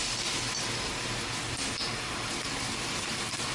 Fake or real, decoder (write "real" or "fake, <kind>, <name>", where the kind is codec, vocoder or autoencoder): real